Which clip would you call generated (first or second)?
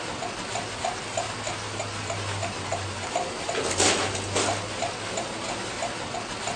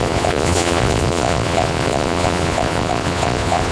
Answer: second